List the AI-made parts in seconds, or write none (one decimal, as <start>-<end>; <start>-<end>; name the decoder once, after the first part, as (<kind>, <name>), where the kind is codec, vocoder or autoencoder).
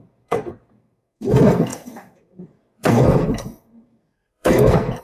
0.0-5.0 (codec, SNAC)